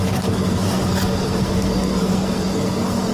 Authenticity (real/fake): fake